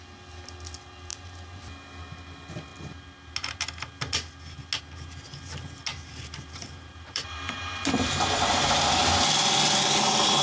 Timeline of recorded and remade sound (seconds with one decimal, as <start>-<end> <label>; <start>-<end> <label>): 0.0-1.1 recorded; 1.1-1.6 remade; 1.6-5.9 recorded; 5.9-7.6 remade; 7.6-10.4 recorded